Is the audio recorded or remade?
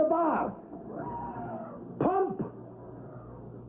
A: recorded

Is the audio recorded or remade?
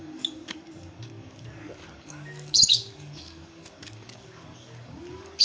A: remade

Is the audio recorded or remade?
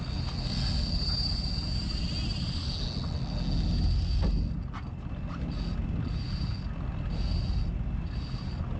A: recorded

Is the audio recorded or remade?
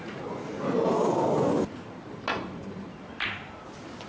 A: recorded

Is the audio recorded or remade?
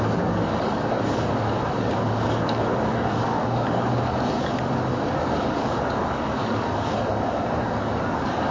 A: remade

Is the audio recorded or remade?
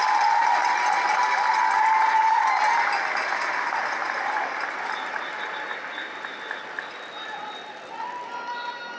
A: recorded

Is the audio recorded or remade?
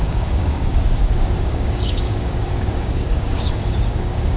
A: remade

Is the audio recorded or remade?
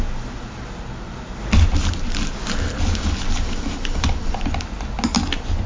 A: recorded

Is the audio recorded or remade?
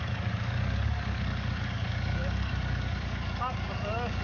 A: remade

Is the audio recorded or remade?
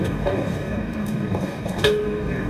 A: remade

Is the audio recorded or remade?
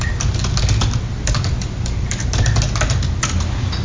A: recorded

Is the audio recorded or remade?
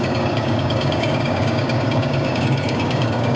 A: remade